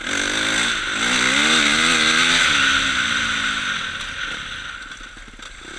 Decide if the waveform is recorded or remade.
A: recorded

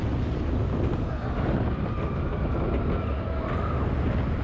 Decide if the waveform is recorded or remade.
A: recorded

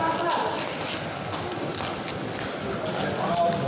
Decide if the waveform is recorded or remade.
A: recorded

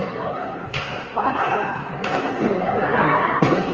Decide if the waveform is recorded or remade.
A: remade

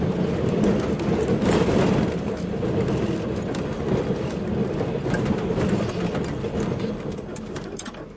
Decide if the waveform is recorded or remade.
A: recorded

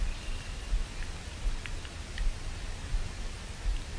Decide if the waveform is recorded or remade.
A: recorded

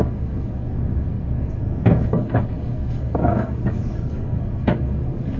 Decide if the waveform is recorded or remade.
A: remade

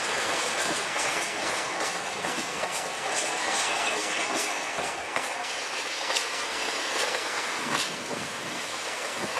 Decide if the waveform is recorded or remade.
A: remade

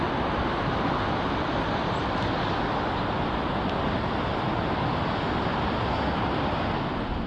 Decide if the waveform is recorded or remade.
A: recorded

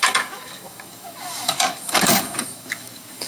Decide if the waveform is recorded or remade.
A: remade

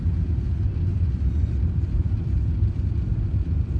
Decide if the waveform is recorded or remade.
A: remade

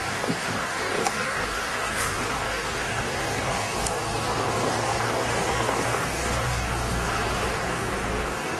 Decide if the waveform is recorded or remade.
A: remade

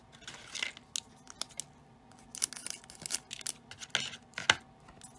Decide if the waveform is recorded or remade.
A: recorded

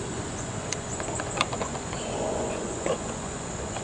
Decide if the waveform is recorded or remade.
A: remade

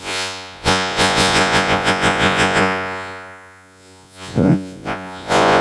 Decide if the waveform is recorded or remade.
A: remade